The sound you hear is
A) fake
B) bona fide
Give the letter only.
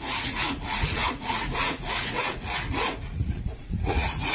A